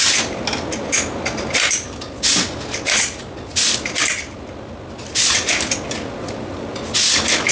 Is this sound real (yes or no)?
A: yes